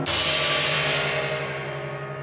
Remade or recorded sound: recorded